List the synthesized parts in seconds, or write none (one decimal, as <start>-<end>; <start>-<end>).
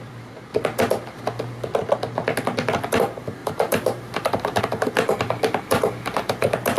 0.0-0.5; 3.0-6.8